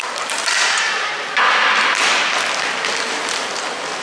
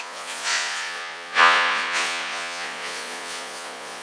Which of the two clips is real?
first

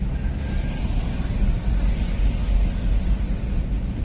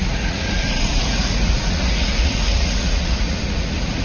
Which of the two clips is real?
first